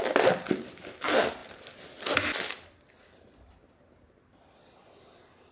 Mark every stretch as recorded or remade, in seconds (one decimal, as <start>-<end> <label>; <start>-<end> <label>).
0.0-5.5 recorded